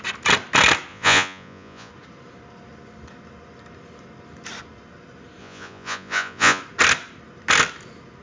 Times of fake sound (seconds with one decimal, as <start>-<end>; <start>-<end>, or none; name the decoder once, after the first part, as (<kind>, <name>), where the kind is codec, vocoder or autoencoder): 0.9-1.9 (vocoder, Vocos); 5.4-6.6